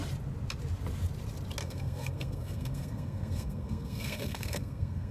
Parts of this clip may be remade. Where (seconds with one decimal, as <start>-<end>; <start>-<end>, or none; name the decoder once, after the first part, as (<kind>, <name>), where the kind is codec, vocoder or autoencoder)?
1.6-5.1 (codec, SNAC)